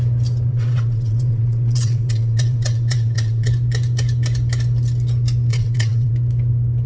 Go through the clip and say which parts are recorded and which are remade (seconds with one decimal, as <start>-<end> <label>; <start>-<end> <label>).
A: 0.0-0.5 recorded; 0.5-3.5 remade; 3.5-5.5 recorded; 5.5-6.1 remade; 6.1-6.9 recorded